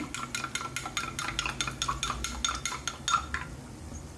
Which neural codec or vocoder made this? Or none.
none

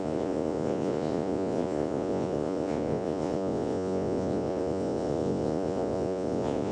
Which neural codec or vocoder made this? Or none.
vocoder, Vocos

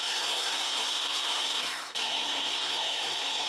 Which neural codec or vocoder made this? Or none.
codec, SNAC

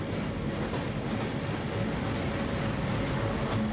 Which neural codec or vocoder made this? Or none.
none